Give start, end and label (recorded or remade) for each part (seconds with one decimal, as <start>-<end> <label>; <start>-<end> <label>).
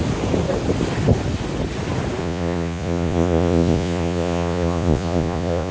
0.0-2.2 recorded; 2.2-5.7 remade